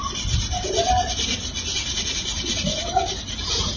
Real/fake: real